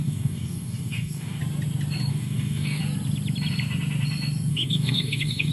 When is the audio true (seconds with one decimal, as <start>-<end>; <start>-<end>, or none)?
1.4-2.1; 2.8-4.5